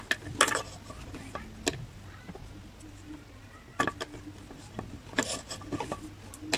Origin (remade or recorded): recorded